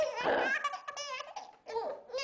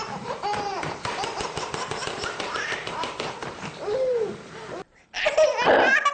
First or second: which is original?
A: first